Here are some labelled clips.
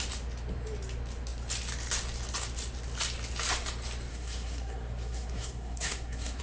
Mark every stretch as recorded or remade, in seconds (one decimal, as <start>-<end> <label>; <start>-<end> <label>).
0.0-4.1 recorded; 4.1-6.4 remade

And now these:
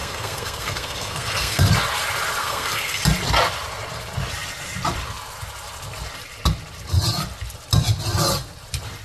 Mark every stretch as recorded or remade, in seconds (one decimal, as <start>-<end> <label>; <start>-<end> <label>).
0.0-1.6 remade; 1.6-2.4 recorded; 2.4-3.0 remade; 3.0-9.0 recorded

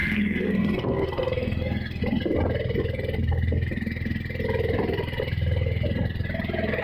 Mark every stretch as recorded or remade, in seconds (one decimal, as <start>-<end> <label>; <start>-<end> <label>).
0.0-2.0 remade; 2.0-6.8 recorded

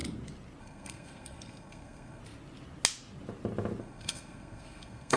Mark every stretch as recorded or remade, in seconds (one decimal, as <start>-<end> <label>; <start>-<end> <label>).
0.0-0.6 recorded; 0.6-2.2 remade; 2.2-3.8 recorded; 3.8-5.2 remade